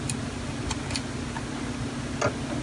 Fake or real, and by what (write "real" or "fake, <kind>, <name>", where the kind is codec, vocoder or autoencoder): real